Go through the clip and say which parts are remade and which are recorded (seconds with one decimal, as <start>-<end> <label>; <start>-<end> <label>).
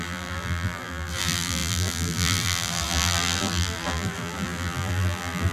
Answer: 0.0-5.5 remade